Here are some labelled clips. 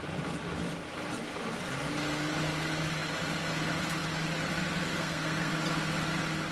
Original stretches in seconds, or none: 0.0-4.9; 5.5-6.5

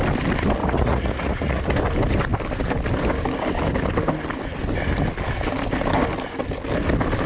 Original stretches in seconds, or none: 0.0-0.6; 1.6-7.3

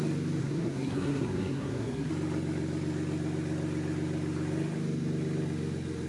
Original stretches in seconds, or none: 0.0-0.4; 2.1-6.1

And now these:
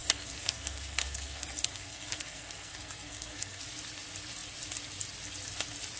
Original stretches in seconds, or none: 3.6-6.0